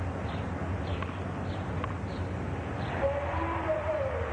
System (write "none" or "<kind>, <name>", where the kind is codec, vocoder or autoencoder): none